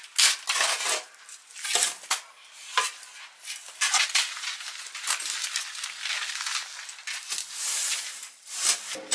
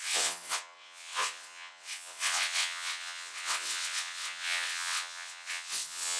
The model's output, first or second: second